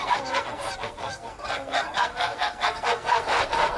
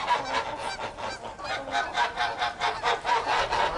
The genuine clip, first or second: second